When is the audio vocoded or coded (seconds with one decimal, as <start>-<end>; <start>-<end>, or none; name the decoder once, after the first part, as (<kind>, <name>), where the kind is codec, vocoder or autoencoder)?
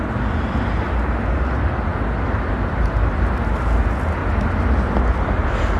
4.2-5.8 (vocoder, BigVGAN v2)